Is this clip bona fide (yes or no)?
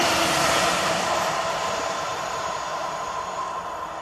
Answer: no